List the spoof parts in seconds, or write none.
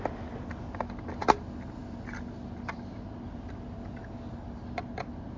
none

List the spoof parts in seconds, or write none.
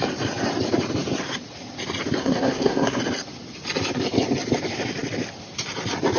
2.2-3.0 (codec, SNAC)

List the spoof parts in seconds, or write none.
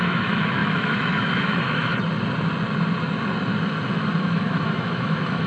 0.0-1.9 (autoencoder, DAC-VAE); 4.2-5.5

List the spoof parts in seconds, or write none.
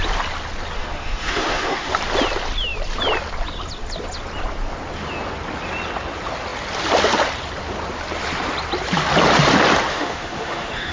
0.8-1.9 (autoencoder, DAC-VAE); 9.9-10.9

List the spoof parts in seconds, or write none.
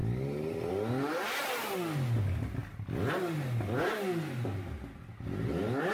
none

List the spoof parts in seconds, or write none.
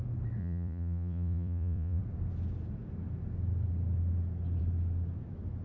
0.4-2.0 (vocoder, Vocos)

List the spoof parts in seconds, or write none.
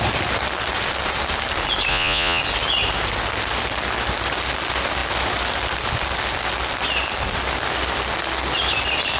1.9-2.4 (vocoder, Vocos)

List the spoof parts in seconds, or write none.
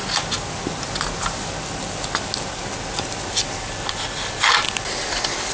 none